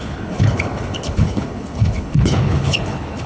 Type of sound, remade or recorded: remade